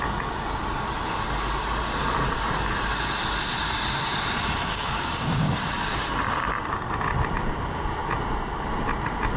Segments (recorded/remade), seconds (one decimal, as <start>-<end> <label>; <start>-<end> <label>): 0.0-4.7 recorded; 4.7-5.6 remade; 5.6-9.4 recorded